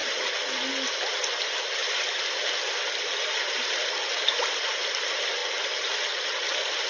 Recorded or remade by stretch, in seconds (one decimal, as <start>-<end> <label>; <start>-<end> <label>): 0.0-6.9 recorded